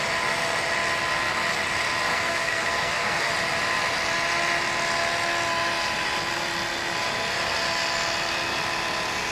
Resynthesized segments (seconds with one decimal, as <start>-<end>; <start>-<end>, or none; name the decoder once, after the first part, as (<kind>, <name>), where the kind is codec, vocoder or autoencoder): 2.1-3.3 (codec, SNAC)